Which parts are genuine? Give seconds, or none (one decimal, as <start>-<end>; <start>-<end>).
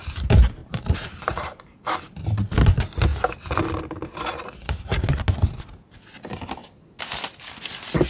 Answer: 0.0-0.6; 1.8-8.1